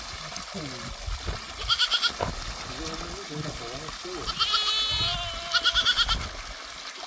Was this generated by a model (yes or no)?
no